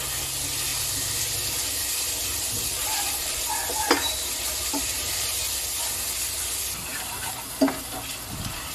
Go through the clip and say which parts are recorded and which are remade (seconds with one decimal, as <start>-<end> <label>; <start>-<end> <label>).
0.0-0.7 recorded; 0.7-1.2 remade; 1.2-2.2 recorded; 2.2-5.6 remade; 5.6-6.9 recorded; 6.9-7.6 remade; 7.6-8.7 recorded